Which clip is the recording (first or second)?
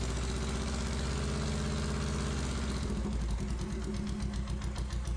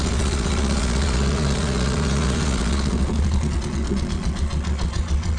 first